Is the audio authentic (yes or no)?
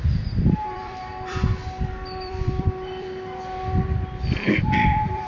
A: no